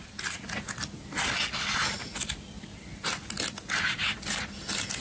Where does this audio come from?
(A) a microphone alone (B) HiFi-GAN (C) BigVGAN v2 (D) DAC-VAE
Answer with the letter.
A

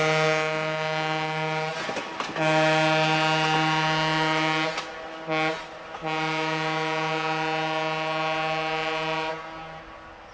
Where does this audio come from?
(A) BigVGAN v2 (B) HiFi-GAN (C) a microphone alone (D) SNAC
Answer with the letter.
C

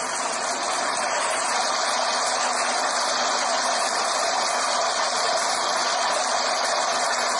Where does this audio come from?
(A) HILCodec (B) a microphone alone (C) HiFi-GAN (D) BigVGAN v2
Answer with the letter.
B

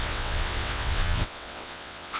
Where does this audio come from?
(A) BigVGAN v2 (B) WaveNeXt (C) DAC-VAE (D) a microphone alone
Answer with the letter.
B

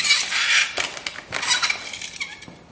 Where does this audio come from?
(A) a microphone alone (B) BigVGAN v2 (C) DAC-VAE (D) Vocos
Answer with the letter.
A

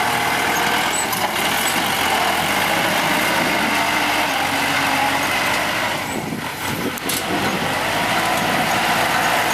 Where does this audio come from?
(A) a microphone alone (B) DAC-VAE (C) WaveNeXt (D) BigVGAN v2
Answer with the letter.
A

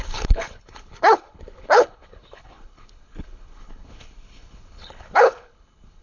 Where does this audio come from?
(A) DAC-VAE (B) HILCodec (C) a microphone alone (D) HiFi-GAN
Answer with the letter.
B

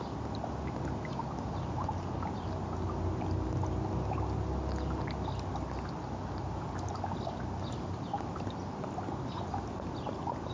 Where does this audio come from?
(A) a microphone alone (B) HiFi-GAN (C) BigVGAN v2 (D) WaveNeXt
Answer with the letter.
A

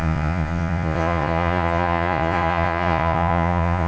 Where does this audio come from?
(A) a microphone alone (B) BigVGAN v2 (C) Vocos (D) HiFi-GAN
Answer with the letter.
C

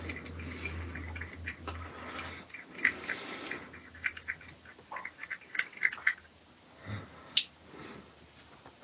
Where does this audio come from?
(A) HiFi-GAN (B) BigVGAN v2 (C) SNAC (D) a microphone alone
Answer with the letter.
D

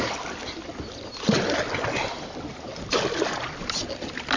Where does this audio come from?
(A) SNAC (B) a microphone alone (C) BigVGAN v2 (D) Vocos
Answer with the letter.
B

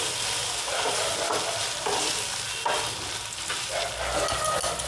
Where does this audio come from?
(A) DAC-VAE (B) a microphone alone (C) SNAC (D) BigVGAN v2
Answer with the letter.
B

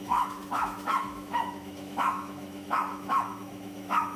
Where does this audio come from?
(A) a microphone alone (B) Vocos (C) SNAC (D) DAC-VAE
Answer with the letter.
D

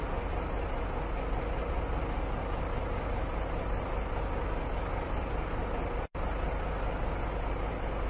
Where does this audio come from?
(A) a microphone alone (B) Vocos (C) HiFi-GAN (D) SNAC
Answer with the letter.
A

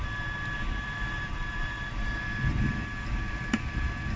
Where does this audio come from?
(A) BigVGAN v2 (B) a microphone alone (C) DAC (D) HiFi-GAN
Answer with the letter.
A